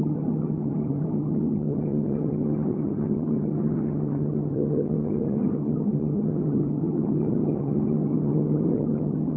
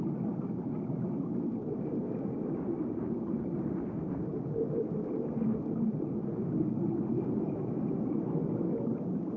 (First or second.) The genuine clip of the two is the second